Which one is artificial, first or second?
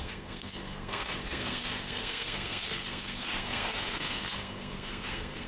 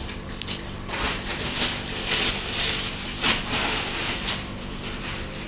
first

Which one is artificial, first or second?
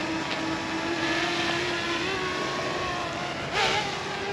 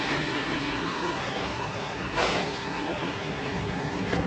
second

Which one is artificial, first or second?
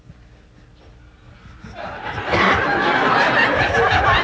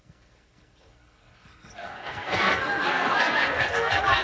second